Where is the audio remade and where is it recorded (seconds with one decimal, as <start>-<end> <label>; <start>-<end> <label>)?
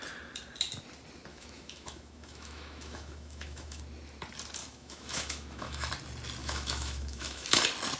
0.0-1.3 recorded; 1.3-3.8 remade; 3.8-4.6 recorded; 4.6-5.9 remade; 5.9-6.4 recorded; 6.4-7.6 remade; 7.6-8.0 recorded